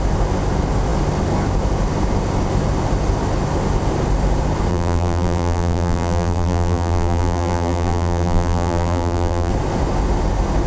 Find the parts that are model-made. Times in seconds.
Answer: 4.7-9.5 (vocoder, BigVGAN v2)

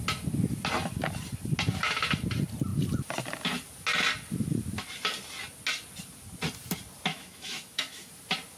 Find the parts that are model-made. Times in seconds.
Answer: 7.1-8.1 (autoencoder, DAC-VAE)

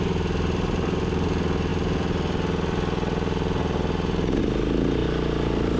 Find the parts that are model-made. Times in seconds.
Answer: none

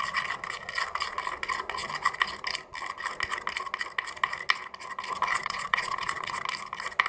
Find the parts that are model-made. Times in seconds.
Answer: 5.3-6.4 (vocoder, Vocos)

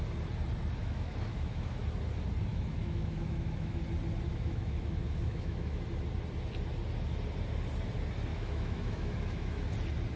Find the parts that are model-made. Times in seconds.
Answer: 0.8-1.8 (autoencoder, DAC-VAE); 2.5-3.8; 4.3-5.8; 8.3-9.6

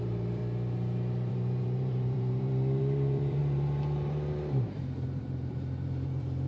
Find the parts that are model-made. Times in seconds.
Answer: 0.0-0.4 (vocoder, BigVGAN v2); 1.3-6.5

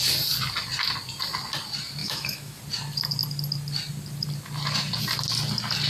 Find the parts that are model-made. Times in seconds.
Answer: 2.0-2.6 (autoencoder, DAC-VAE)

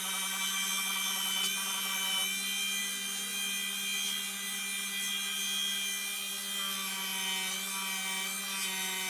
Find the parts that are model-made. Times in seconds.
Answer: none